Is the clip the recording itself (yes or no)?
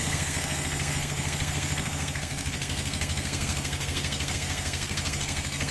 no